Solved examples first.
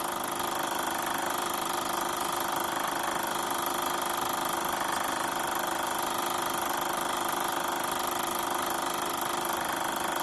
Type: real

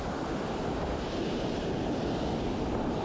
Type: real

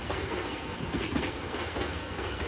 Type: fake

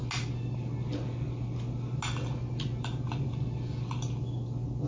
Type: real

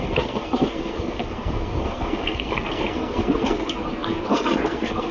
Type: fake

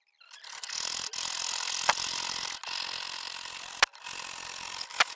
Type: real